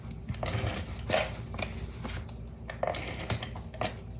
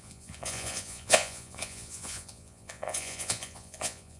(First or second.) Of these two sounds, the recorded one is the first